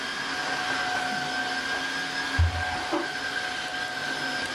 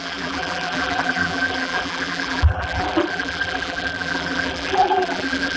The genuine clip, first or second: first